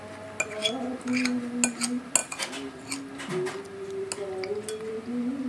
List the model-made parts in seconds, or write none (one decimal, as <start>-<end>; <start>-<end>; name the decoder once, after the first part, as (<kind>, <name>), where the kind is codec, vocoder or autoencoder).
none